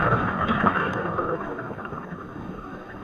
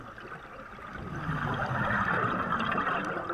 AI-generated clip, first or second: first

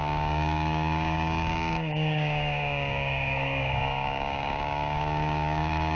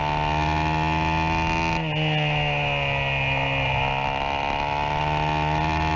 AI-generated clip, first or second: first